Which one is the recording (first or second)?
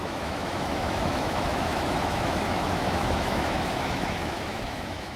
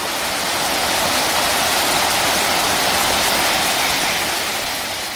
second